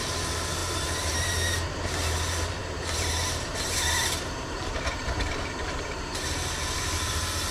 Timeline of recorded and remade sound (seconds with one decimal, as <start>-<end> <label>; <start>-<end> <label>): 0.0-0.6 recorded; 0.6-1.3 remade; 1.3-2.6 recorded; 2.6-7.1 remade; 7.1-7.5 recorded